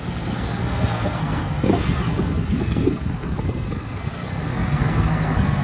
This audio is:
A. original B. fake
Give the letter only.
B